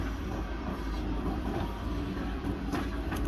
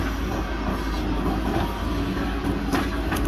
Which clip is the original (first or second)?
second